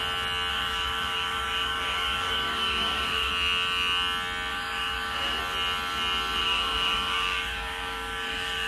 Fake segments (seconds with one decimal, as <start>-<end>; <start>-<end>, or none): 0.5-3.3; 4.5-5.4; 6.4-8.7